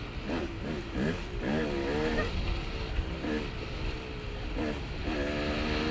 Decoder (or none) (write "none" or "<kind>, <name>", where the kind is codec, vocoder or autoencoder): none